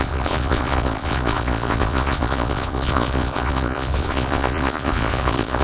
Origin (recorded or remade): remade